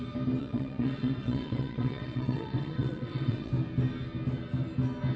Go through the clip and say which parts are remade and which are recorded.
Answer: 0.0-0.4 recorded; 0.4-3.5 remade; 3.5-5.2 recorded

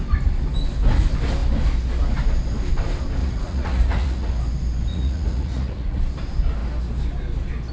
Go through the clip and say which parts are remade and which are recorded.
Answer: 0.0-3.2 recorded; 3.2-4.3 remade; 4.3-4.9 recorded; 4.9-6.0 remade; 6.0-7.7 recorded

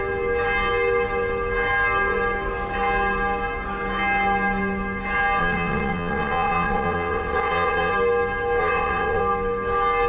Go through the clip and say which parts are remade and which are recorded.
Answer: 0.0-5.4 recorded; 5.4-7.9 remade; 7.9-8.6 recorded; 8.6-9.2 remade; 9.2-10.1 recorded